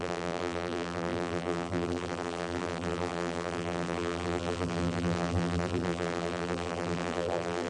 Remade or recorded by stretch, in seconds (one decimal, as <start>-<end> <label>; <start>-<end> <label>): 0.0-7.7 remade